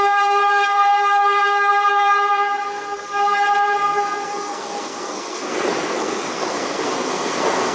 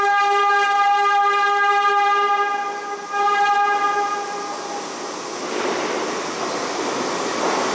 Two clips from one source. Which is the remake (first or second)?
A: first